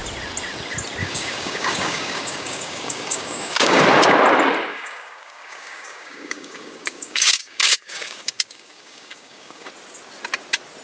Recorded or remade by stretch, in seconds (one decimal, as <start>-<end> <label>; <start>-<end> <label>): 0.0-1.0 recorded; 1.0-3.8 remade; 3.8-4.7 recorded; 4.7-9.7 remade; 9.7-10.8 recorded